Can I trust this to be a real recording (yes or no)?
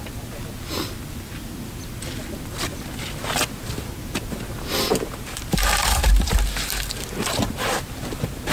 yes